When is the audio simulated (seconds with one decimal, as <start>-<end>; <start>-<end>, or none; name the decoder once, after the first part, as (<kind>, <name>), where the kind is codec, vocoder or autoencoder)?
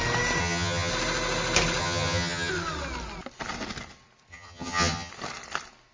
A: 0.4-0.9 (vocoder, HiFi-GAN); 1.8-2.5; 4.3-5.1